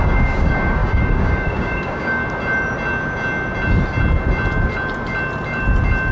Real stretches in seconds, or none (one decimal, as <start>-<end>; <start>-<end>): 2.2-6.1